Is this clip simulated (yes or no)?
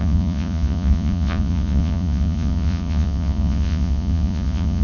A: yes